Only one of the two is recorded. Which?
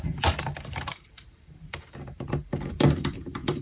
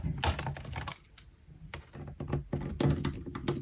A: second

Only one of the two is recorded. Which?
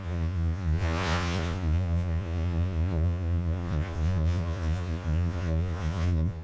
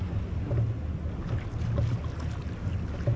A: second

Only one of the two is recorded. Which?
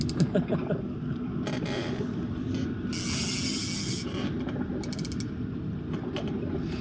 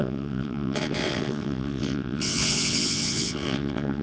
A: first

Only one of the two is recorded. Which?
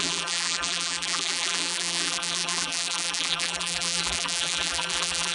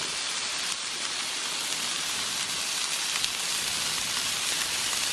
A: second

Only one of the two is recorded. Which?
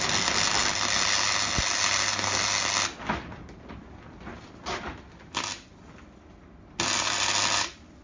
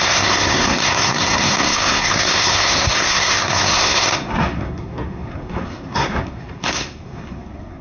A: first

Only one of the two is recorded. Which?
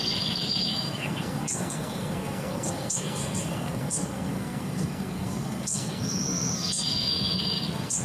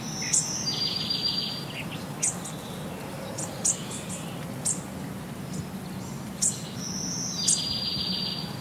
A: second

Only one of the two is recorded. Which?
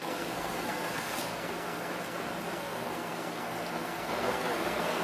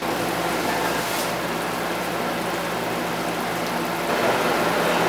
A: second